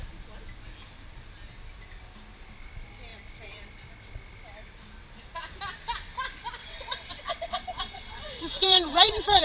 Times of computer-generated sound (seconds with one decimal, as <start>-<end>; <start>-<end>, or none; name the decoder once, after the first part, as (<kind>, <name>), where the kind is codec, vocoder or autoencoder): 6.6-9.4 (vocoder, WaveNeXt)